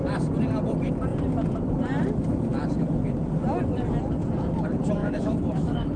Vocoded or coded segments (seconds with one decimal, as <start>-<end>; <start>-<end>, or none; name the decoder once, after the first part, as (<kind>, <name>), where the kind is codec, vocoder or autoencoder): 5.0-6.0 (autoencoder, DAC-VAE)